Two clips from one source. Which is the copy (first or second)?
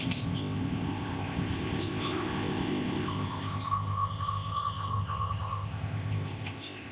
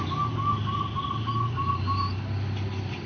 first